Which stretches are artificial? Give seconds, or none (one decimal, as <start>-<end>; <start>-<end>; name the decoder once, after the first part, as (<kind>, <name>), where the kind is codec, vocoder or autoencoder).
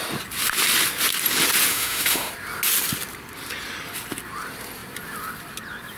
1.7-2.3 (autoencoder, DAC-VAE)